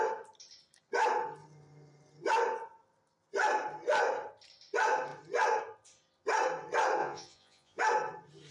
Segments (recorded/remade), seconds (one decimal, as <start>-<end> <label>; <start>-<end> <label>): 0.0-7.0 recorded; 7.0-7.8 remade; 7.8-8.5 recorded